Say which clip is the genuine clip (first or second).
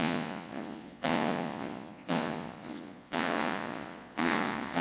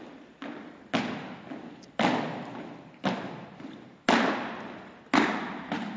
second